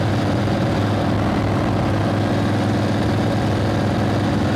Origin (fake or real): real